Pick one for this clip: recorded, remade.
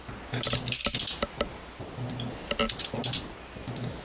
recorded